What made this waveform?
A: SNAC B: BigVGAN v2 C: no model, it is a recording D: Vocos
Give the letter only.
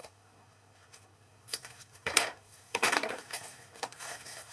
A